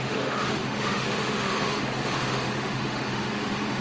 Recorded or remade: remade